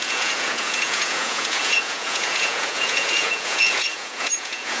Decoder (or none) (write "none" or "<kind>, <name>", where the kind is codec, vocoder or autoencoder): vocoder, Vocos